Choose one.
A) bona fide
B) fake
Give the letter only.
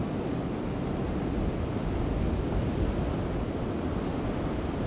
A